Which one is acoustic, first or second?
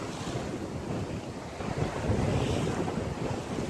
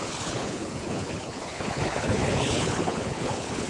first